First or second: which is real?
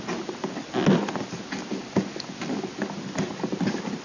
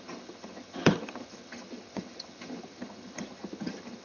first